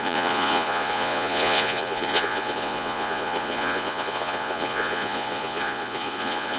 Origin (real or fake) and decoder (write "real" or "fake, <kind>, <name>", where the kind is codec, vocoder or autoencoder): fake, vocoder, Vocos